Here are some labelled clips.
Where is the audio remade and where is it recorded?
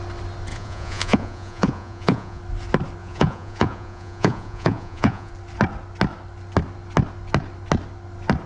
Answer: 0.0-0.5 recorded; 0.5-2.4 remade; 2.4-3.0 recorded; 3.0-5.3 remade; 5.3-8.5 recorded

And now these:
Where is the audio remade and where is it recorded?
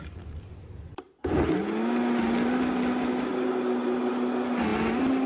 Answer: 0.0-5.3 recorded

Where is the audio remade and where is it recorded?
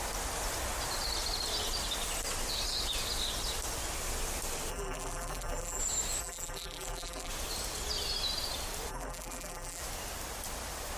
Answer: 0.0-4.7 recorded; 4.7-5.8 remade; 5.8-6.2 recorded; 6.2-7.3 remade; 7.3-8.9 recorded; 8.9-9.8 remade; 9.8-11.0 recorded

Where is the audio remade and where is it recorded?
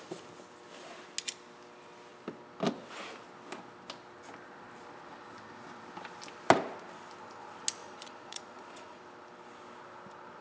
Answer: 0.0-7.8 recorded; 7.8-9.0 remade; 9.0-10.4 recorded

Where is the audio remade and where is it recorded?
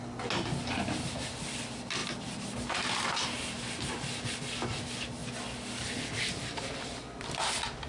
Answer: 0.0-7.9 recorded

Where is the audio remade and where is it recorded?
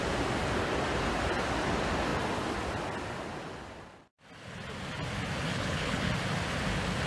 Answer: 0.0-5.5 recorded; 5.5-6.1 remade; 6.1-7.1 recorded